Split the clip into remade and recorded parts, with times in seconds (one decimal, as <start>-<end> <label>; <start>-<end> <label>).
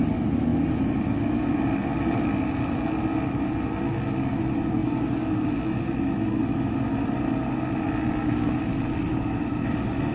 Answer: 0.0-10.1 recorded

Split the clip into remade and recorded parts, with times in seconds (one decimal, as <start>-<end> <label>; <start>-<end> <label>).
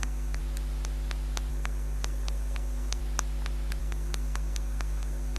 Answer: 0.0-0.4 remade; 0.4-1.5 recorded; 1.5-3.0 remade; 3.0-3.8 recorded; 3.8-5.4 remade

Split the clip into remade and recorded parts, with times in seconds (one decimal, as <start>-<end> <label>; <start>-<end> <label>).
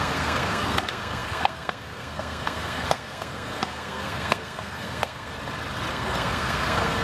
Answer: 0.0-5.3 remade; 5.3-5.9 recorded; 5.9-7.0 remade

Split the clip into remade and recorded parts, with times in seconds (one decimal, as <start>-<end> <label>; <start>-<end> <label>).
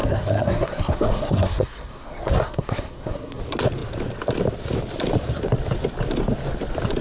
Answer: 0.0-3.4 remade; 3.4-7.0 recorded